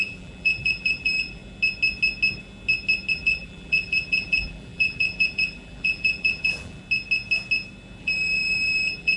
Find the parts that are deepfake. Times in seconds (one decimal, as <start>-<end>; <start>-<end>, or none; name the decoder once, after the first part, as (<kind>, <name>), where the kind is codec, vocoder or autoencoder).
0.0-1.4 (vocoder, BigVGAN v2); 3.1-6.8; 8.0-9.2

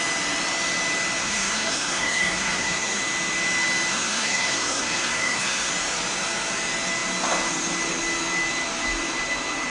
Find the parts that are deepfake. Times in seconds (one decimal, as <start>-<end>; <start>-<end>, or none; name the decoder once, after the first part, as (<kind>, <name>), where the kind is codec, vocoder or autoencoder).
1.2-3.0 (codec, SNAC); 3.9-5.7